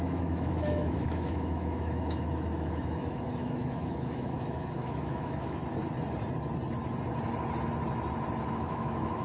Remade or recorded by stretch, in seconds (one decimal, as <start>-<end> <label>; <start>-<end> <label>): 0.0-5.6 remade; 5.6-8.5 recorded; 8.5-9.2 remade